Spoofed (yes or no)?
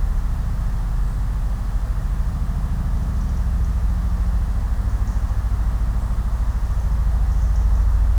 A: no